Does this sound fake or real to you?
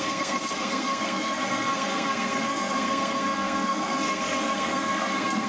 fake